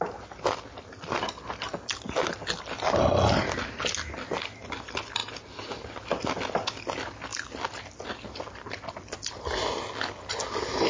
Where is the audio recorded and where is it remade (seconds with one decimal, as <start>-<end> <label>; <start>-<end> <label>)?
0.0-10.9 recorded